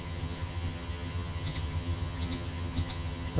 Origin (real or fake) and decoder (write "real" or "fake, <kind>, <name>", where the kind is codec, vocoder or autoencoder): fake, vocoder, HiFi-GAN